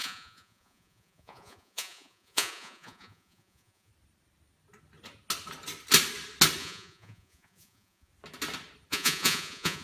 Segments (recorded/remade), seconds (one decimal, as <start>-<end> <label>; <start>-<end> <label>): 0.0-3.9 remade; 3.9-6.6 recorded; 6.6-8.1 remade; 8.1-8.9 recorded; 8.9-9.8 remade